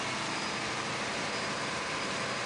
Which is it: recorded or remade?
recorded